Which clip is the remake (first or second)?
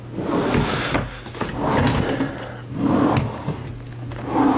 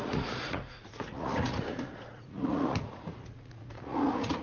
second